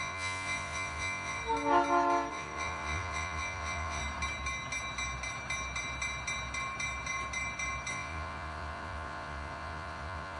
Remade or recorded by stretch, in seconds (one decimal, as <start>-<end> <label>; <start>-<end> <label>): 0.0-1.4 remade; 1.4-2.3 recorded; 2.3-4.0 remade; 4.0-7.9 recorded; 7.9-10.4 remade